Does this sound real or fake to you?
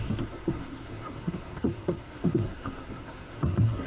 fake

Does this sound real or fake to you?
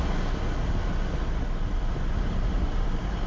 real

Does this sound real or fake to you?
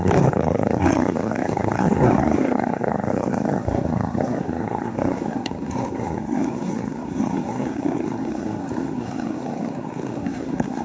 fake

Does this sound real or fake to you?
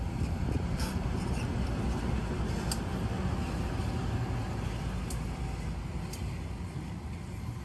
real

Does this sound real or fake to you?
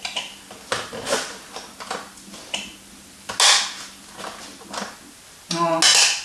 real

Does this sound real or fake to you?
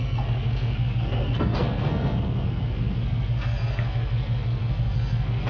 fake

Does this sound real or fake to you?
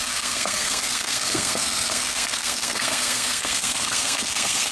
fake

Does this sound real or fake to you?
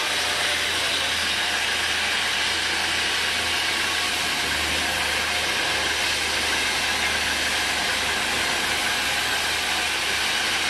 real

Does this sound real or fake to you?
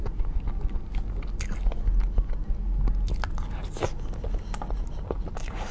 real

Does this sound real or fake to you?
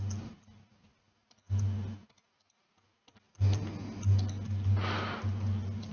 real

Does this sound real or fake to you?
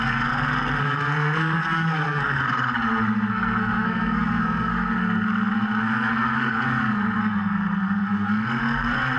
fake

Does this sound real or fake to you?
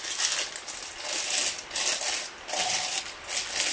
real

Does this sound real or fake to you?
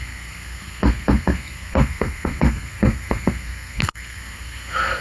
fake